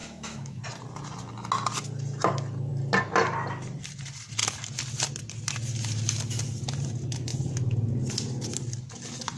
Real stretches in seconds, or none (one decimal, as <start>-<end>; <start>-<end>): 0.6-9.4